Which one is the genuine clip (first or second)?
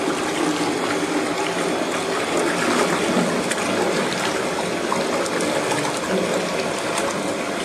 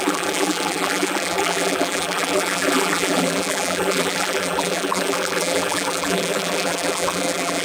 first